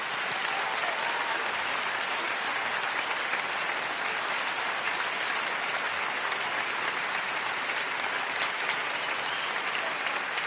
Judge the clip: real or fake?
real